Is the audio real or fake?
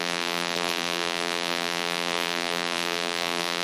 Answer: fake